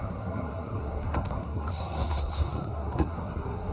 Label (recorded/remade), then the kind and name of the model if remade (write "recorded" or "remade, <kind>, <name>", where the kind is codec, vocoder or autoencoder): remade, codec, SNAC